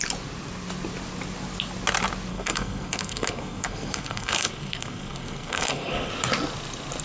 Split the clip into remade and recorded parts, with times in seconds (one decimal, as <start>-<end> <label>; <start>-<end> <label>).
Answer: 0.0-2.3 recorded; 2.3-6.1 remade; 6.1-7.0 recorded